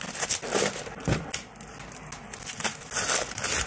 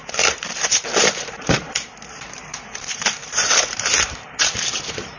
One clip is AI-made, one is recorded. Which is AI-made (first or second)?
second